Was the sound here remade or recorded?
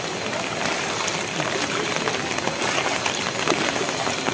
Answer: recorded